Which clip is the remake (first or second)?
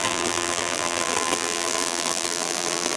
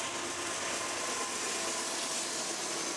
first